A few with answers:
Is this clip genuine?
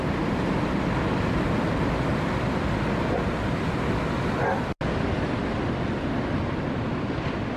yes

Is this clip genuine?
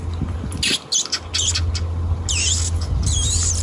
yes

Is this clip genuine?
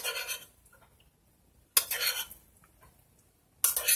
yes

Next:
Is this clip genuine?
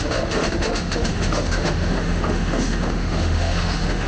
no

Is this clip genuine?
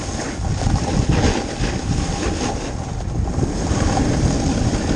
yes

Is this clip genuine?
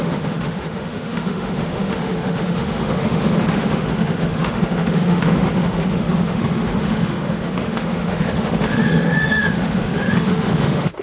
no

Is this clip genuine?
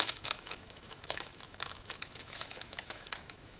no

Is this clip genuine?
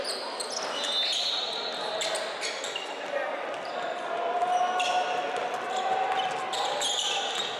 yes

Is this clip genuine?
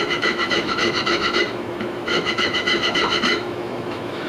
no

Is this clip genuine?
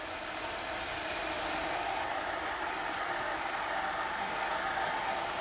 yes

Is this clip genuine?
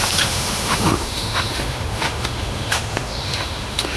no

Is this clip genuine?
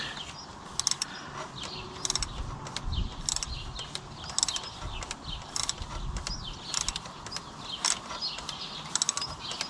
yes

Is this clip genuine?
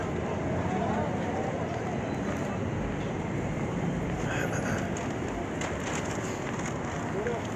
yes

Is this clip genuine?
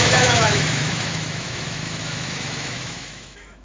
no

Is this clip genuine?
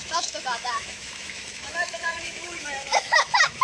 no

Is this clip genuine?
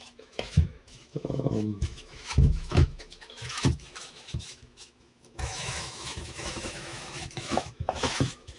no